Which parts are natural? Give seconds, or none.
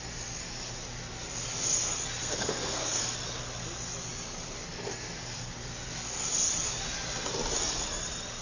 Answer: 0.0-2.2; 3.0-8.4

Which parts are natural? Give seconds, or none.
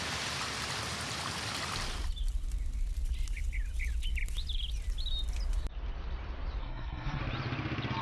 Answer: 0.0-6.6; 7.2-8.0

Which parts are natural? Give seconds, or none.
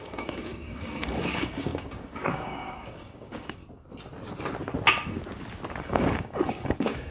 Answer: 3.6-5.8